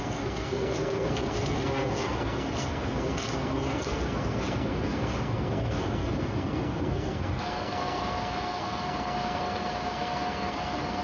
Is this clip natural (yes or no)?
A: no